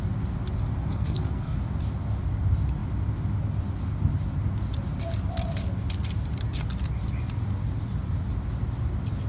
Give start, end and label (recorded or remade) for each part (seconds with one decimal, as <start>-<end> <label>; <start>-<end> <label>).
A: 0.0-0.9 recorded; 0.9-1.6 remade; 1.6-9.3 recorded